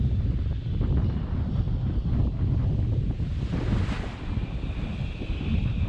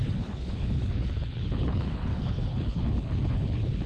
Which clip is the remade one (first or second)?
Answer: second